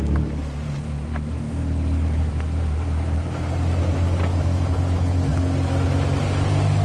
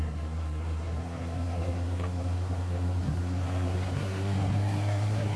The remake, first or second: second